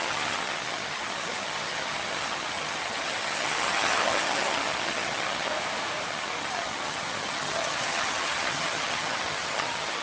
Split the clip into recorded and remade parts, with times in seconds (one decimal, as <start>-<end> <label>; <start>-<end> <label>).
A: 0.0-5.5 remade; 5.5-6.1 recorded; 6.1-10.0 remade